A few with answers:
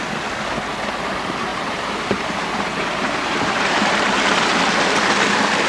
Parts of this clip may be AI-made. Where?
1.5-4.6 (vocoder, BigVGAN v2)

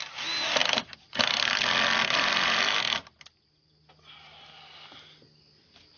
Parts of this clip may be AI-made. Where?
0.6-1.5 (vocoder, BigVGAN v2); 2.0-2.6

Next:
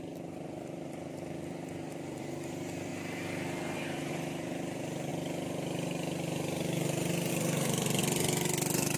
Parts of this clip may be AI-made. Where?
0.0-2.9 (vocoder, BigVGAN v2); 4.1-5.1; 7.3-8.0